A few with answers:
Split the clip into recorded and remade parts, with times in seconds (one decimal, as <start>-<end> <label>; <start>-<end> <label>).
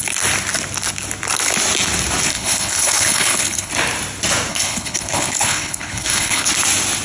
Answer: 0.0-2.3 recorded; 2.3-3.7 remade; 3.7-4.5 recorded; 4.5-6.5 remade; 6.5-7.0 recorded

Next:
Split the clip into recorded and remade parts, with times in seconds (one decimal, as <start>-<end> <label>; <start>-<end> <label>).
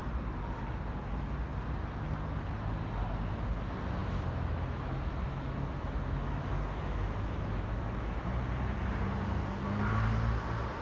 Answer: 0.0-4.0 recorded; 4.0-8.2 remade; 8.2-10.8 recorded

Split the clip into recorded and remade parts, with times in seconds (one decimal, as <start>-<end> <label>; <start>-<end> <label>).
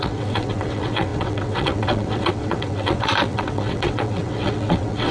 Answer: 0.0-5.1 remade